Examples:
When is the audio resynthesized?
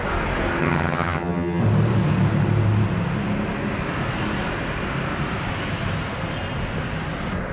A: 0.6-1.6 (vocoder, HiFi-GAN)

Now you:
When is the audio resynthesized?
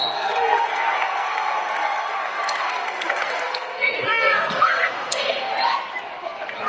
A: 0.0-5.5 (codec, SNAC); 6.2-6.7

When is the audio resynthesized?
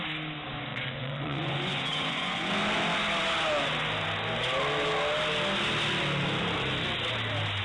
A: 0.7-2.5 (vocoder, Vocos)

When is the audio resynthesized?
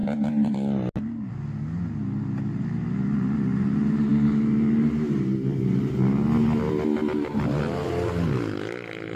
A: none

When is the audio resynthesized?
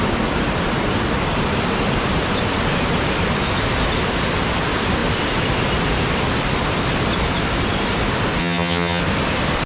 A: 8.4-9.0 (vocoder, HiFi-GAN)